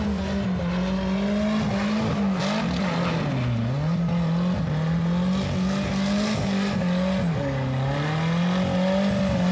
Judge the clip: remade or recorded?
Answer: recorded